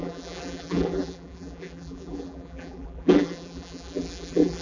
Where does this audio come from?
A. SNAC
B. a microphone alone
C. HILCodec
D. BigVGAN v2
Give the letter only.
D